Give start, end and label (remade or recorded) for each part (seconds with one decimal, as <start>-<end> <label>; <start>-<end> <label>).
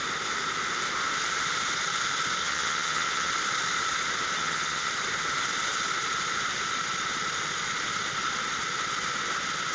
0.0-2.4 recorded; 2.4-3.3 remade; 3.3-4.4 recorded; 4.4-4.9 remade; 4.9-9.7 recorded